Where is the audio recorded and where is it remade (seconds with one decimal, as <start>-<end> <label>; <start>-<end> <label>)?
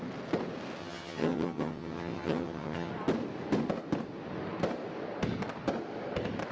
0.0-0.8 recorded; 0.8-2.9 remade; 2.9-6.5 recorded